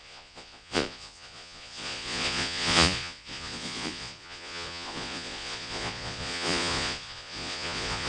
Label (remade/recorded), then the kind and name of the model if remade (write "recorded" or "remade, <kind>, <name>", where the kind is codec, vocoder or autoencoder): remade, vocoder, Vocos